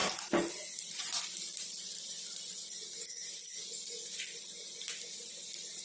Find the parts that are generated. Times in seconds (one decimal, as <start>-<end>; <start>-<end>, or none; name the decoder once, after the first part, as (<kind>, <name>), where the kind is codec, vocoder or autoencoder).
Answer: none